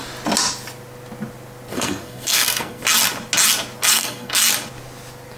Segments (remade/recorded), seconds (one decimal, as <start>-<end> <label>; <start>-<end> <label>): 0.0-1.7 recorded; 1.7-2.8 remade; 2.8-3.9 recorded; 3.9-4.4 remade; 4.4-5.4 recorded